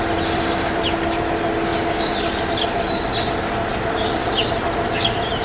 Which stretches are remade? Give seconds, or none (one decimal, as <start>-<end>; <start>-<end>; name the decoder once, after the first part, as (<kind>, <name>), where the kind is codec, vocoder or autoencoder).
none